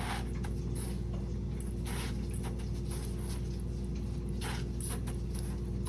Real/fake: real